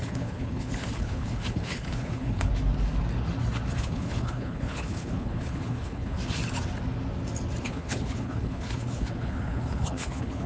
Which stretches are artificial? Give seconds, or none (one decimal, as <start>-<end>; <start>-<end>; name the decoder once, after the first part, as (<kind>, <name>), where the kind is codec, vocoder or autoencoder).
0.0-2.5 (codec, HILCodec); 3.8-6.2; 7.6-10.5